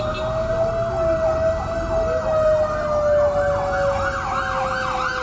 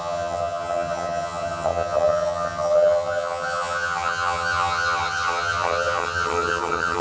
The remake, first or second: second